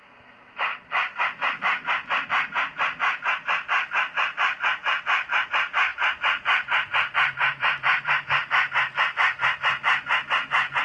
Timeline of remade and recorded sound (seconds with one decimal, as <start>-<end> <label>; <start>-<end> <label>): 0.0-10.8 recorded